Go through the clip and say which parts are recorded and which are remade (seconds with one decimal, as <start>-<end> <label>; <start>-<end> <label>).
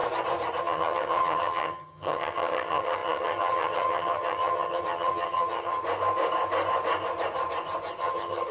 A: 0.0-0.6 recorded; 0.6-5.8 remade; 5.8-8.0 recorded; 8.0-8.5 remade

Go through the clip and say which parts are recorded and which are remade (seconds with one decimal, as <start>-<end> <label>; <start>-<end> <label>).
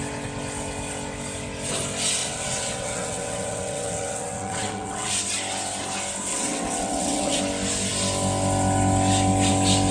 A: 0.0-2.2 recorded; 2.2-5.1 remade; 5.1-6.3 recorded; 6.3-7.4 remade; 7.4-9.9 recorded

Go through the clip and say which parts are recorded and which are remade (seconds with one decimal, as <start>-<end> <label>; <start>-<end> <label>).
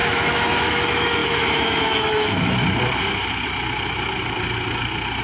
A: 0.0-2.6 remade; 2.6-5.2 recorded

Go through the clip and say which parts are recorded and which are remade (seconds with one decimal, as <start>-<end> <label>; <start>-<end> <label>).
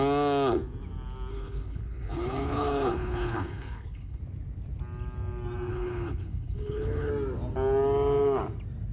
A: 0.0-1.3 recorded; 1.3-4.2 remade; 4.2-5.7 recorded; 5.7-7.1 remade; 7.1-8.9 recorded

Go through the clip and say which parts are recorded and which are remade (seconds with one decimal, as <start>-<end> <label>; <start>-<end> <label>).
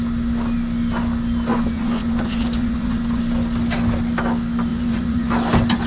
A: 0.0-1.5 recorded; 1.5-3.2 remade; 3.2-4.7 recorded; 4.7-5.3 remade; 5.3-5.9 recorded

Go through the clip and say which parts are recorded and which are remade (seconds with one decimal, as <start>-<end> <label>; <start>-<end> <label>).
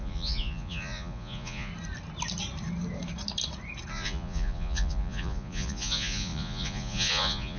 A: 0.0-1.7 remade; 1.7-3.9 recorded; 3.9-7.6 remade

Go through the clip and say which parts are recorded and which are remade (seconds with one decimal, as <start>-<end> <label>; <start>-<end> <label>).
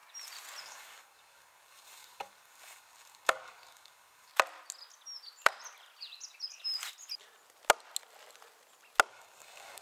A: 0.0-0.6 recorded; 0.6-4.3 remade; 4.3-9.1 recorded; 9.1-9.8 remade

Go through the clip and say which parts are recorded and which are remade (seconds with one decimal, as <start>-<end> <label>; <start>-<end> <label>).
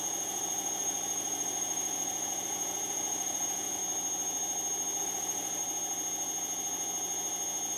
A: 0.0-3.8 remade; 3.8-5.0 recorded; 5.0-5.6 remade; 5.6-7.8 recorded